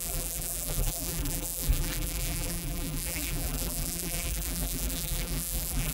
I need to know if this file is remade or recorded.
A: remade